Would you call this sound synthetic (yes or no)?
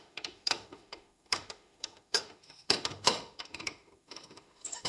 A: yes